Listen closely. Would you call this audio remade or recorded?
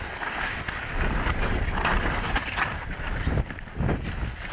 recorded